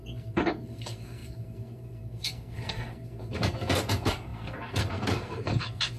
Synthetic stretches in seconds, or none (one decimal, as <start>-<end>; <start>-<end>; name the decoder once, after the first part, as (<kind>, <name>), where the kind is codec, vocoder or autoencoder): 0.0-6.0 (codec, SNAC)